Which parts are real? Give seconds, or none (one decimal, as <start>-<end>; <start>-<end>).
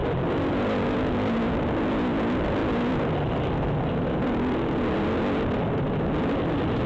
0.0-6.9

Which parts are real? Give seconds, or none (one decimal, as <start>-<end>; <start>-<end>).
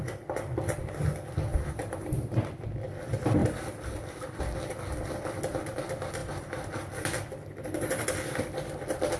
0.0-1.5; 2.4-6.2; 6.7-9.2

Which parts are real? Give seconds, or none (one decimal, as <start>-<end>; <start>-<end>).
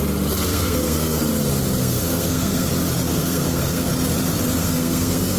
0.0-0.5; 1.2-1.8; 2.7-3.1; 3.9-4.6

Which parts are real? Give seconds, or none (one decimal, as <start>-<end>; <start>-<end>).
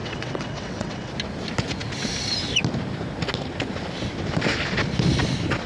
1.1-5.7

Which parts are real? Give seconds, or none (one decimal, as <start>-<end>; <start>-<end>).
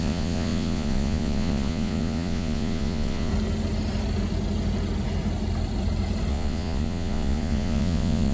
3.3-6.3